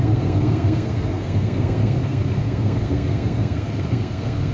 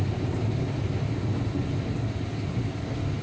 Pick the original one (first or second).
second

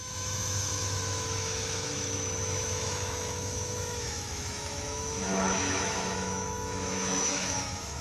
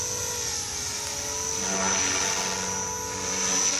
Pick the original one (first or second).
second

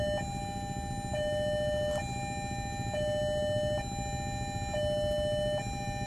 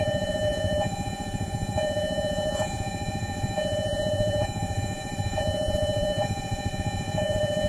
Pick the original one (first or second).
first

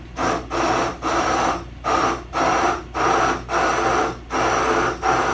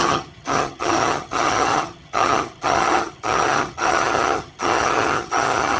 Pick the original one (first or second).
first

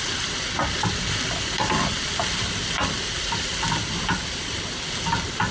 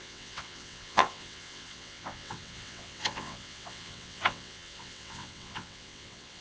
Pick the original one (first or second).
first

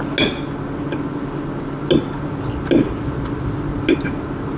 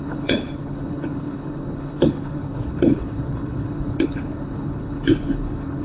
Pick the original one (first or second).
first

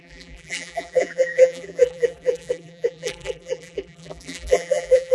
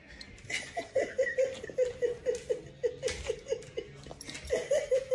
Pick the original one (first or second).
second